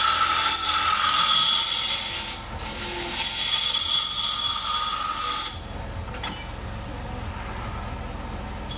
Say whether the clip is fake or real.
real